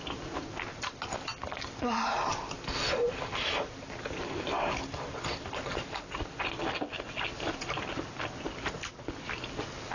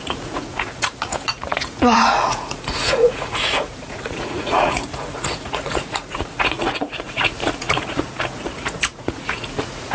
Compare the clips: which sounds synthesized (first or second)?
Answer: second